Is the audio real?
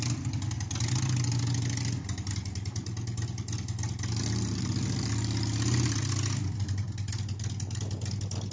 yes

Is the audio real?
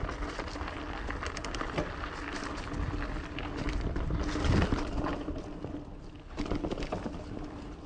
yes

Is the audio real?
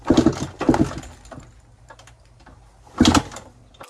yes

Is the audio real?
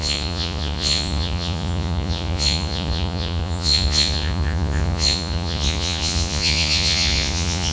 no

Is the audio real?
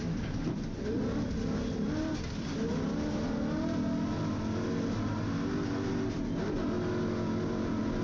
yes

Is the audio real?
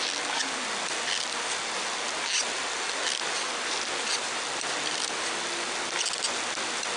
yes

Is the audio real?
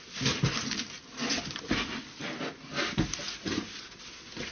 yes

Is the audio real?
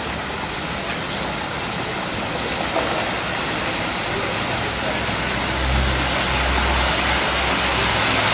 yes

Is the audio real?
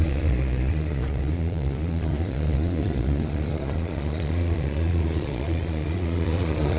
no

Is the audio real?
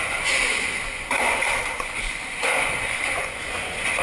no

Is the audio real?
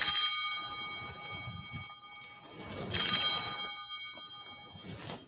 yes